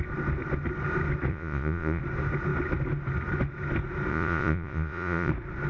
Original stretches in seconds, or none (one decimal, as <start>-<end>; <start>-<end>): 0.0-1.3; 2.0-4.1; 5.3-5.7